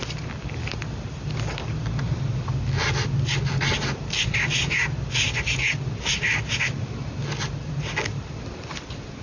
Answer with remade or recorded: recorded